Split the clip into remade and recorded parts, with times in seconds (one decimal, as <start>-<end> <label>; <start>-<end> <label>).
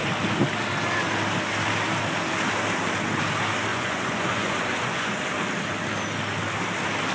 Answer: 0.0-3.7 recorded; 3.7-5.1 remade; 5.1-7.1 recorded